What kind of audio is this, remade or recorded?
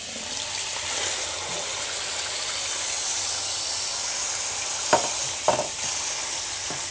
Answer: recorded